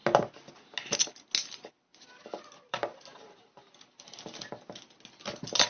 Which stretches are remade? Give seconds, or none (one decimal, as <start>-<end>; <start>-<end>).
none